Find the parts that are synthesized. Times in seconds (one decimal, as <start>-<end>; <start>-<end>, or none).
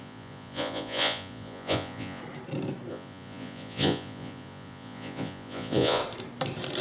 0.0-2.2; 2.9-6.0